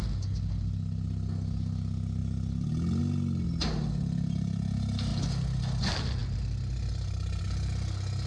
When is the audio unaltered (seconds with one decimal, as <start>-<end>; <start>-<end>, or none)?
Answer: 0.0-8.3